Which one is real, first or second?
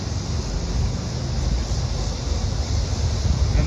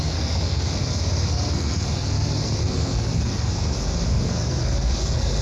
first